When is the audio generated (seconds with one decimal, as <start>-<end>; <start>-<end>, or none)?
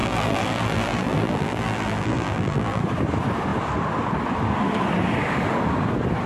0.0-2.8